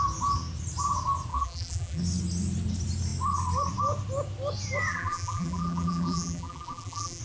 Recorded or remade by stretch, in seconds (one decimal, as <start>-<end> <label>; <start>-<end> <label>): 0.0-1.3 recorded; 1.3-2.0 remade; 2.0-4.9 recorded; 4.9-7.2 remade